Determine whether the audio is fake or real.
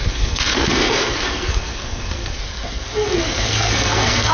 fake